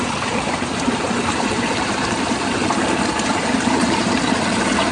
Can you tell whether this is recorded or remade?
remade